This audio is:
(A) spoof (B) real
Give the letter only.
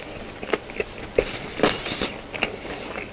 B